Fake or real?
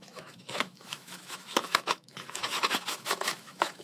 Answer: fake